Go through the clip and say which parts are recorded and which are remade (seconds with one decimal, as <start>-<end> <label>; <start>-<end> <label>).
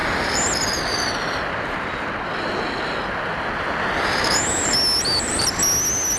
0.0-6.2 recorded